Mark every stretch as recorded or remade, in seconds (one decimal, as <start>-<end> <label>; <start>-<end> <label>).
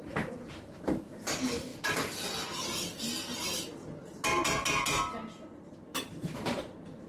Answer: 0.0-1.7 remade; 1.7-5.5 recorded; 5.5-7.1 remade